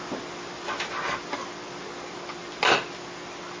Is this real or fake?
real